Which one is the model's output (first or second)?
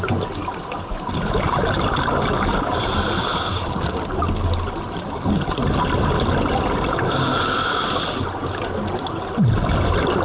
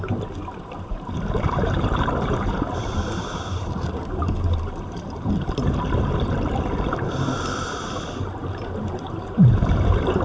second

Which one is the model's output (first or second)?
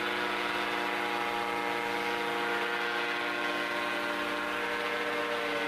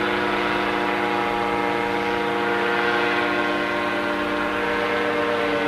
second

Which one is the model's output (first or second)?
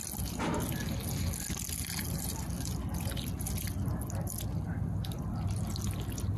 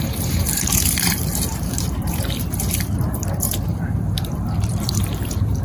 second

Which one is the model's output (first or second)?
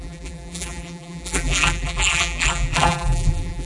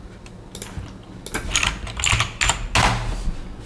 first